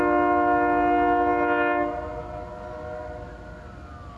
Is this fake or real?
real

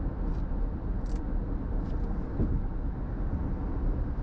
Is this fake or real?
real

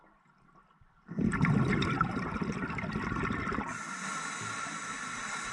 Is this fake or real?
fake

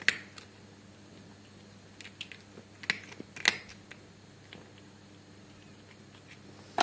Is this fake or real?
real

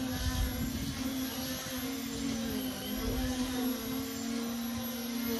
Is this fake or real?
real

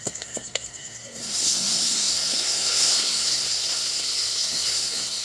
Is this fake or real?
fake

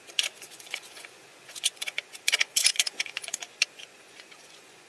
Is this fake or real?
fake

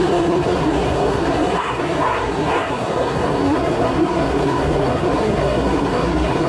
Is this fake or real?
fake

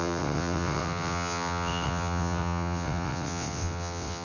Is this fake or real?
fake